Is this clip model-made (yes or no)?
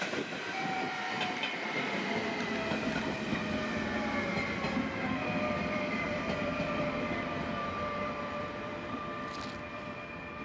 yes